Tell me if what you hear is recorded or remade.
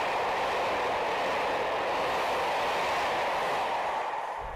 recorded